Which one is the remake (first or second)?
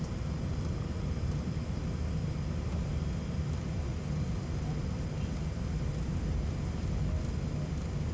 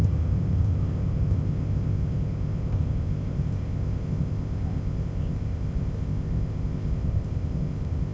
second